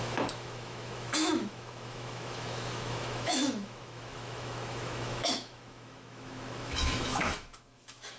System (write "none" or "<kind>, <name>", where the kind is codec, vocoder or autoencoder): autoencoder, DAC-VAE